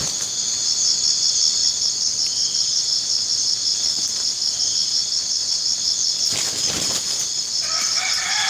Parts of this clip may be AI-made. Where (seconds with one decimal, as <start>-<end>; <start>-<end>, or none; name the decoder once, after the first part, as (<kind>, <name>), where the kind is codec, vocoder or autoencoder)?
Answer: none